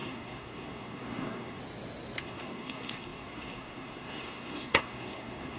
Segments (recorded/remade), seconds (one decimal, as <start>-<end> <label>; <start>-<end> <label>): 0.0-1.6 remade; 1.6-2.2 recorded; 2.2-5.6 remade